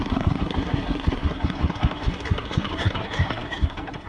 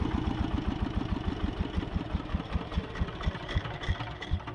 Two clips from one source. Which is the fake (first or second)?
first